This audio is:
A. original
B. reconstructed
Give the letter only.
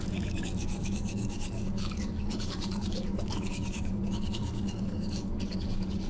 B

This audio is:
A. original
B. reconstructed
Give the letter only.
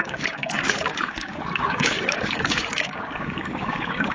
B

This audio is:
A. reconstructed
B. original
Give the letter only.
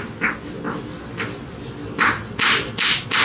B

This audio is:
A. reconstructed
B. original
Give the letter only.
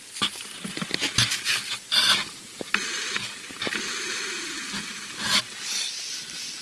B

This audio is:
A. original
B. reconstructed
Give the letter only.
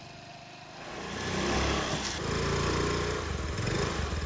A